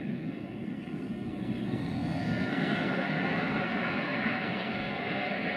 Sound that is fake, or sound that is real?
fake